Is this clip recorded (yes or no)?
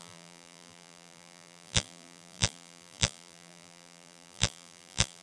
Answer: no